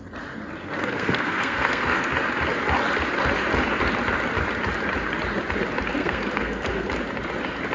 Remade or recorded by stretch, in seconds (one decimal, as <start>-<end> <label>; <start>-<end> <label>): 0.0-0.6 recorded; 0.6-2.1 remade; 2.1-6.0 recorded; 6.0-6.9 remade; 6.9-7.7 recorded